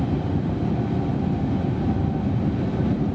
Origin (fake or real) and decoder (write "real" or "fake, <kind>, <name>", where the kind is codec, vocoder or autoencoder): fake, vocoder, BigVGAN v2